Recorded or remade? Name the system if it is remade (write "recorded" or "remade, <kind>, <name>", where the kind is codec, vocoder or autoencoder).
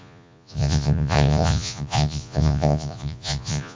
remade, vocoder, Vocos